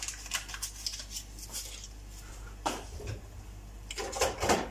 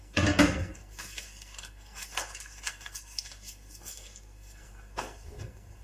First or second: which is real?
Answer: first